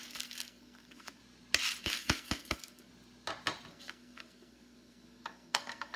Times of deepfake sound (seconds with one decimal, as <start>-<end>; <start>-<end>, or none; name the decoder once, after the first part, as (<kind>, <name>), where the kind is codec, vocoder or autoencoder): 0.0-1.2 (codec, SNAC); 1.8-2.9; 3.7-6.0